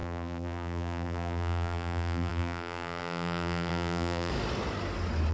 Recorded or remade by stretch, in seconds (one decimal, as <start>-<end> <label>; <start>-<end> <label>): 0.0-4.3 remade; 4.3-5.3 recorded